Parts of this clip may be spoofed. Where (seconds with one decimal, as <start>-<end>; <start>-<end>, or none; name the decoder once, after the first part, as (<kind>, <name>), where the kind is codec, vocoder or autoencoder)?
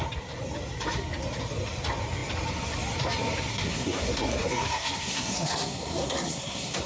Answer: 3.5-6.9 (codec, SNAC)